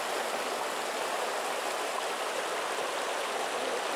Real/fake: real